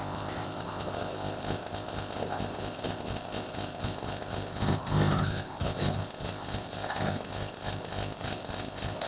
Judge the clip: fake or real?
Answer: fake